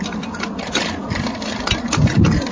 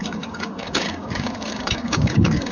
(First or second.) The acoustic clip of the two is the first